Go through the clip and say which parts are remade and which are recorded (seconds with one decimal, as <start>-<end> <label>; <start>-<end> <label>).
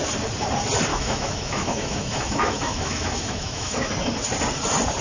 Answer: 0.0-0.9 recorded; 0.9-3.9 remade; 3.9-5.0 recorded